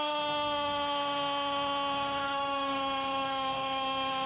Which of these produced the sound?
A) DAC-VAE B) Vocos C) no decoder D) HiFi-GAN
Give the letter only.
A